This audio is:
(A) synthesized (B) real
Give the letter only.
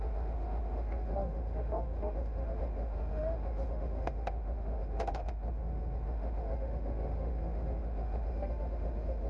A